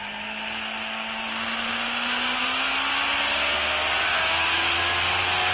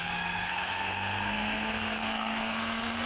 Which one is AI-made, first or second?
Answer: second